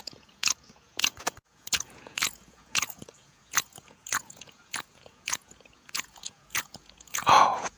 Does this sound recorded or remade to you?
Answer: remade